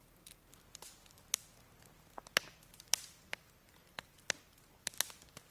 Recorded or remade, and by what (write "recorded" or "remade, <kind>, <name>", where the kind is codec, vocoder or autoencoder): recorded